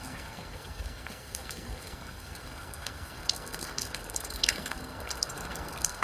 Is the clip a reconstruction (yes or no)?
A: yes